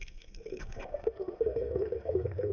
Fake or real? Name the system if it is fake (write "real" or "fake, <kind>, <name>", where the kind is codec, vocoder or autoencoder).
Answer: fake, codec, SNAC